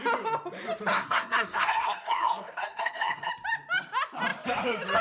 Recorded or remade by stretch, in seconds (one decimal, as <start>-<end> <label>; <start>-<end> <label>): 0.0-0.9 recorded; 0.9-3.3 remade; 3.3-5.0 recorded